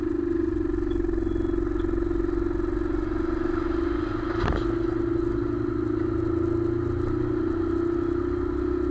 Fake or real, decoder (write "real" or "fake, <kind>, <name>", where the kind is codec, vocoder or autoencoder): real